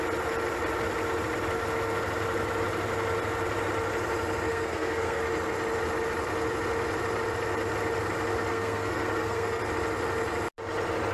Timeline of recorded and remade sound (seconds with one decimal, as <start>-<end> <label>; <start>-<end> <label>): 0.0-4.5 recorded; 4.5-5.2 remade; 5.2-8.5 recorded; 8.5-9.6 remade; 9.6-11.1 recorded